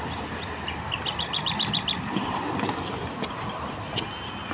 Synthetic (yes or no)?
no